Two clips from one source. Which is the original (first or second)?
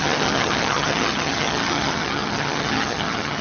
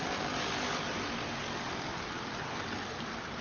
second